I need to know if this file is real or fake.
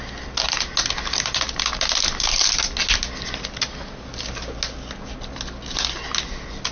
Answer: real